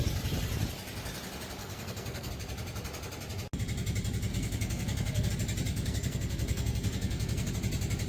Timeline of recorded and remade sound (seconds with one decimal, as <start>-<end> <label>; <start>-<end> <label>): 0.0-1.6 recorded; 1.6-2.3 remade; 2.3-4.3 recorded; 4.3-5.3 remade; 5.3-5.7 recorded; 5.7-7.5 remade; 7.5-8.1 recorded